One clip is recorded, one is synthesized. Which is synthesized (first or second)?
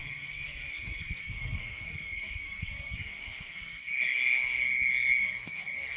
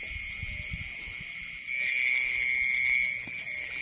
first